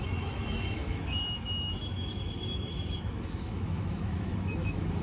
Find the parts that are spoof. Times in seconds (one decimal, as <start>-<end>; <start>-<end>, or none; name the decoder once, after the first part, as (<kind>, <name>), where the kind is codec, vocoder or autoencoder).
0.0-5.0 (autoencoder, DAC-VAE)